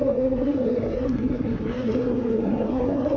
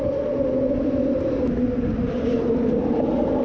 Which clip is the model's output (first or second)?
first